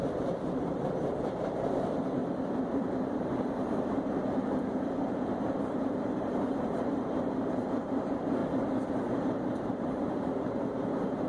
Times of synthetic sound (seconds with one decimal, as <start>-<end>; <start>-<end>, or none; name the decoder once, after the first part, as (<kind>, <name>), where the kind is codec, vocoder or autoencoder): 0.0-2.2 (vocoder, BigVGAN v2); 2.7-8.4; 9.1-11.3